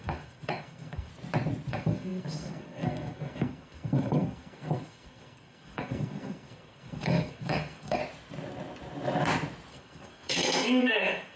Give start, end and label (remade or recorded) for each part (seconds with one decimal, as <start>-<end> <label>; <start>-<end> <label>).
0.0-1.1 remade; 1.1-1.7 recorded; 1.7-8.0 remade; 8.0-9.7 recorded; 9.7-11.4 remade